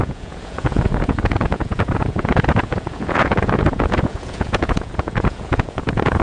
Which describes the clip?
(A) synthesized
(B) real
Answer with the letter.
A